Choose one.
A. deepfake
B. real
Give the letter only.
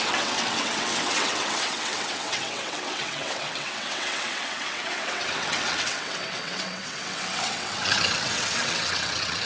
A